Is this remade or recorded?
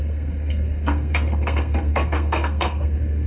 remade